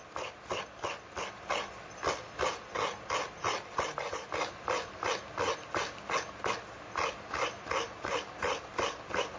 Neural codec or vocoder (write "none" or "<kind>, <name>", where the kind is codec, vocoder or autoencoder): none